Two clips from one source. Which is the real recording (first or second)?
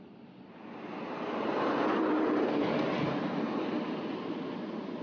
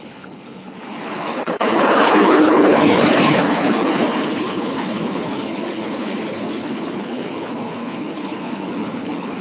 first